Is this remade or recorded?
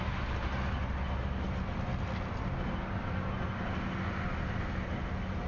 recorded